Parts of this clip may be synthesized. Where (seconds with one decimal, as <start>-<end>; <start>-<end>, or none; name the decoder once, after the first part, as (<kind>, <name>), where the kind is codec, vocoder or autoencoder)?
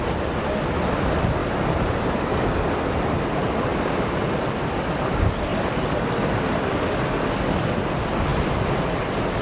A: 1.4-2.5 (vocoder, BigVGAN v2); 3.7-4.6